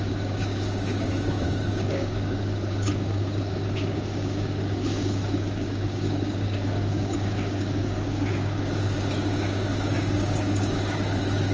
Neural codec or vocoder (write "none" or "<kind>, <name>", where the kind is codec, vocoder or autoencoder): codec, DAC